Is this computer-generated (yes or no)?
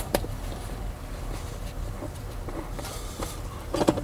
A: yes